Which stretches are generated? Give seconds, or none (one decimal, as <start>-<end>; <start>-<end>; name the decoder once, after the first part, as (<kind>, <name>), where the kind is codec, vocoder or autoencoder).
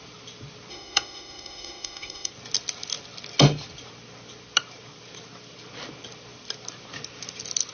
0.7-2.3 (autoencoder, DAC-VAE)